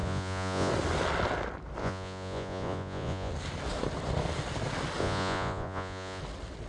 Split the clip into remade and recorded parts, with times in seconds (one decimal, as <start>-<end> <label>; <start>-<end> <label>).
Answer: 0.0-0.7 remade; 0.7-1.8 recorded; 1.8-3.3 remade; 3.3-5.0 recorded; 5.0-6.2 remade; 6.2-6.7 recorded